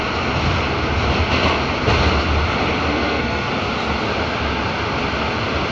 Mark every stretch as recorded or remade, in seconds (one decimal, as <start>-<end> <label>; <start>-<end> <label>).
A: 0.0-2.9 recorded; 2.9-3.5 remade; 3.5-5.7 recorded